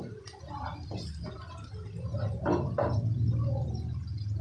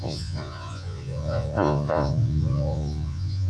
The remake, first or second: second